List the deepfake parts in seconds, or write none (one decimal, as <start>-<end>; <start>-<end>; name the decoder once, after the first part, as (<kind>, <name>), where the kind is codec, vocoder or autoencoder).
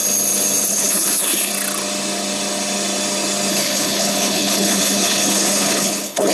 0.7-1.5 (codec, HILCodec); 3.5-6.3